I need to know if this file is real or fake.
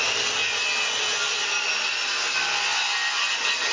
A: real